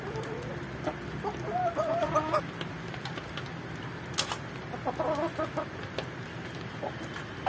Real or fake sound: real